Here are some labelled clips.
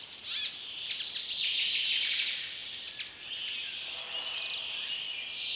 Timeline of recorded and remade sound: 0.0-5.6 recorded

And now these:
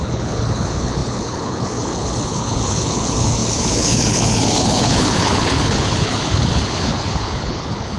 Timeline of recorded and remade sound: 0.0-8.0 remade

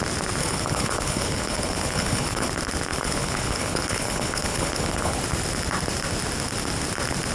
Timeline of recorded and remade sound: 0.0-0.4 recorded; 0.4-2.5 remade; 2.5-2.9 recorded; 2.9-5.2 remade; 5.2-7.3 recorded